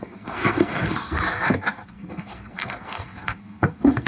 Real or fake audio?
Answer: fake